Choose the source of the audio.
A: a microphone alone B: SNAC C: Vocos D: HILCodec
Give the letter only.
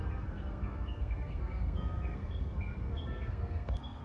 B